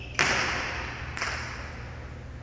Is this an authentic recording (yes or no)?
yes